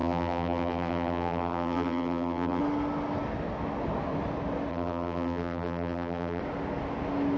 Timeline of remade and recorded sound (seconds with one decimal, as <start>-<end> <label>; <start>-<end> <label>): 0.0-2.6 remade; 2.6-4.7 recorded; 4.7-6.4 remade; 6.4-7.4 recorded